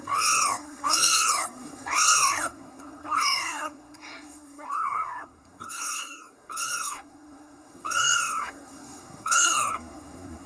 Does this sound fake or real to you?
fake